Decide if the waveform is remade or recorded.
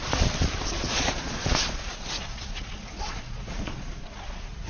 remade